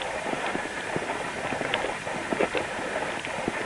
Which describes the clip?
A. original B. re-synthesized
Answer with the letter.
A